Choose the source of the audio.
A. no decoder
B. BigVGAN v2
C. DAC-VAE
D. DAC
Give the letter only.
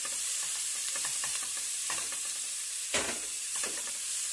B